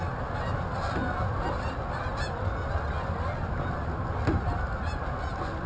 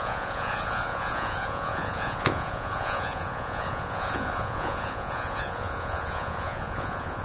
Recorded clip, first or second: first